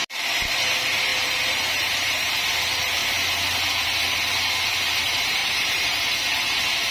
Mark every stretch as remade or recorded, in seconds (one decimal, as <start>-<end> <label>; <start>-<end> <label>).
0.0-1.1 recorded; 1.1-2.3 remade; 2.3-5.4 recorded; 5.4-6.0 remade; 6.0-6.9 recorded